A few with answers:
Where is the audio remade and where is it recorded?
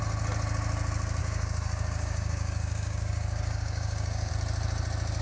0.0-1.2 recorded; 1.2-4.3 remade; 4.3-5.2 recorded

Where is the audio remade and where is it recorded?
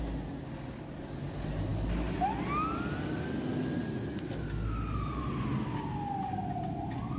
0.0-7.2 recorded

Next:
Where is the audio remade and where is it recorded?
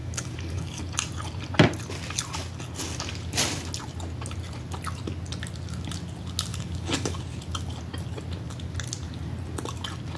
0.0-0.8 remade; 0.8-6.5 recorded; 6.5-7.2 remade; 7.2-10.2 recorded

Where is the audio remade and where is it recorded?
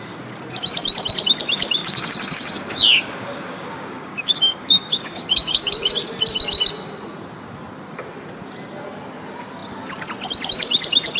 0.0-1.8 recorded; 1.8-5.9 remade; 5.9-11.2 recorded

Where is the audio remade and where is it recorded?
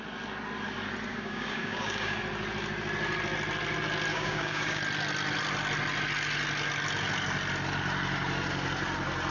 0.0-1.1 recorded; 1.1-2.2 remade; 2.2-4.1 recorded; 4.1-4.8 remade; 4.8-9.3 recorded